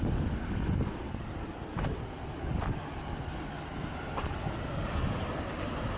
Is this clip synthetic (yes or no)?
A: no